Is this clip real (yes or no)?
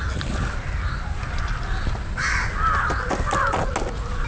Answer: yes